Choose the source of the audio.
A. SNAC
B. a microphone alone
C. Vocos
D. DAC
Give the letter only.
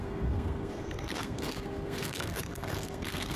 A